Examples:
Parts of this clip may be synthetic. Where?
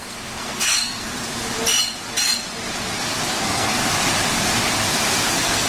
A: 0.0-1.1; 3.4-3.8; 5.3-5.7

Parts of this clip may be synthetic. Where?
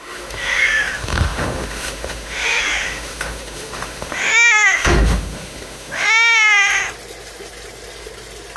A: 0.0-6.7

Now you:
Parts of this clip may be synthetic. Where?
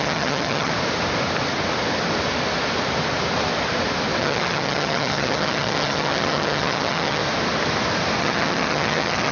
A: 0.0-0.7; 4.2-7.2; 8.2-9.3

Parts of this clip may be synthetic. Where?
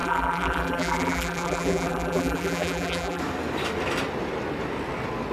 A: 0.0-3.2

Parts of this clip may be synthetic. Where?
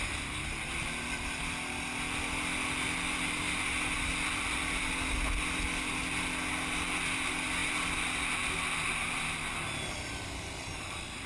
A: none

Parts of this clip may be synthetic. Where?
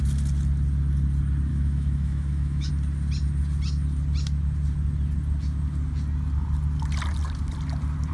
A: 1.5-2.7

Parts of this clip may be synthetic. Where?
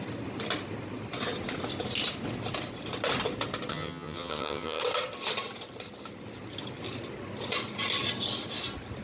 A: 3.7-4.8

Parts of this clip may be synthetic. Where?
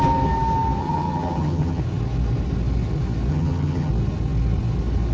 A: 0.8-1.8; 3.3-3.9